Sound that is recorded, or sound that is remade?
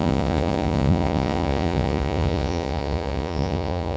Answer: remade